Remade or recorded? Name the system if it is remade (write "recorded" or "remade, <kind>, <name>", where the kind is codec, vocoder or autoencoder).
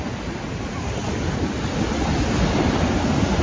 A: recorded